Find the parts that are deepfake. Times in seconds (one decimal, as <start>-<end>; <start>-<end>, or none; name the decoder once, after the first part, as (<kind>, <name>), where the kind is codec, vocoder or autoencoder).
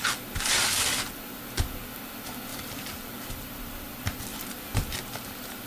2.5-3.2 (vocoder, BigVGAN v2); 4.3-5.0